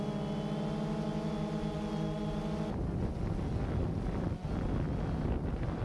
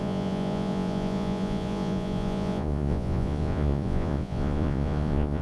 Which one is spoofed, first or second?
second